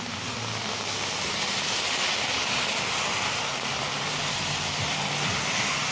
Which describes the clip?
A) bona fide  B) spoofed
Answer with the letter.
A